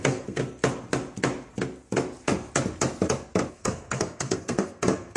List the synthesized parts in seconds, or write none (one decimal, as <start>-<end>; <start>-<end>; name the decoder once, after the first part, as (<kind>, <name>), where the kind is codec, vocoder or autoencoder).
0.0-0.4 (codec, SNAC); 3.5-5.2